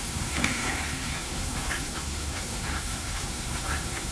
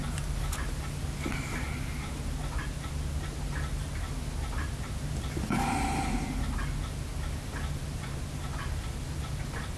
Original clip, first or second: second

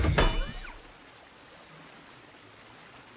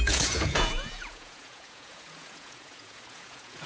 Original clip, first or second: first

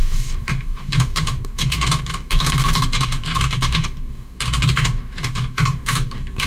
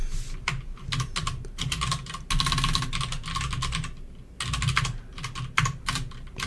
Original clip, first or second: second